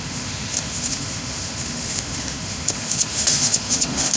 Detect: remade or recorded remade